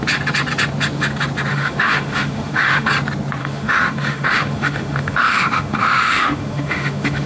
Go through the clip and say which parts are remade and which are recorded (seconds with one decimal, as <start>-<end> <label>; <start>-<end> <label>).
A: 0.0-1.5 recorded; 1.5-2.9 remade; 2.9-3.4 recorded; 3.4-7.3 remade